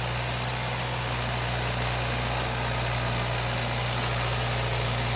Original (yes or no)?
yes